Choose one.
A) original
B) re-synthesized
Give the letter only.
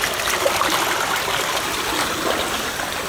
A